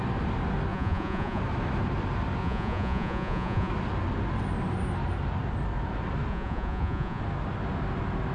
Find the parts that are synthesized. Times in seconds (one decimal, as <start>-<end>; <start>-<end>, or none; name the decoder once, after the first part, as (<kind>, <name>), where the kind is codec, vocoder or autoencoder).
0.7-1.4 (vocoder, Vocos); 2.4-3.7; 6.3-7.2